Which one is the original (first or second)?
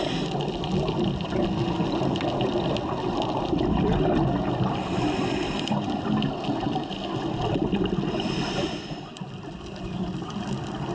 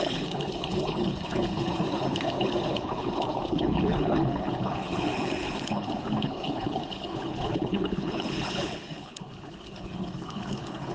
first